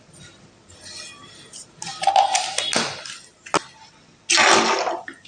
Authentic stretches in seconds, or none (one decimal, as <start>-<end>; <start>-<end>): 0.0-5.3